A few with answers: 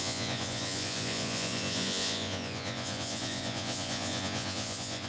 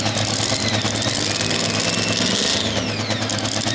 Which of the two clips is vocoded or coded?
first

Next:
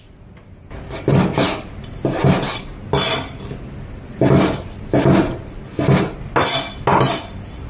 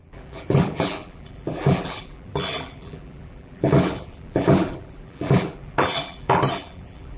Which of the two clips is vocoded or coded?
second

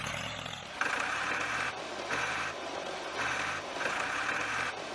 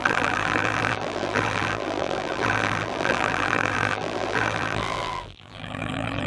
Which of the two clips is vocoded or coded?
second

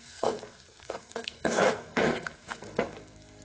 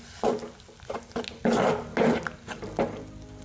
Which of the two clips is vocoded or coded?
first